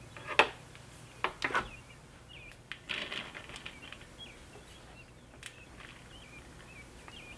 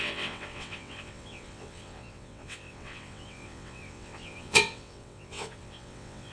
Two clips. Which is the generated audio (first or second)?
second